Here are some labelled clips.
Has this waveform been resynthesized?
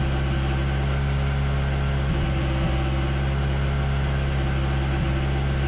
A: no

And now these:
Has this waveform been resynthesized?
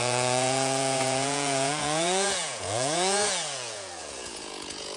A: yes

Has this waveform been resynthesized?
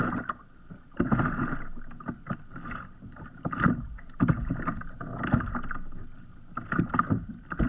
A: no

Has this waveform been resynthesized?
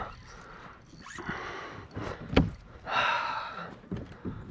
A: no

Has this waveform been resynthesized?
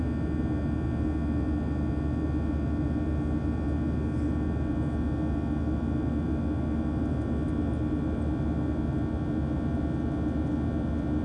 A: no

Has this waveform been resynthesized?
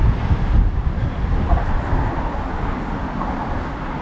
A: no